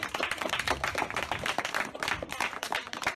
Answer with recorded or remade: remade